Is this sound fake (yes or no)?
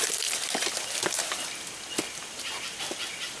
no